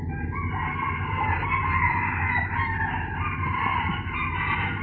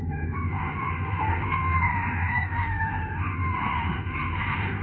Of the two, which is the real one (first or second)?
first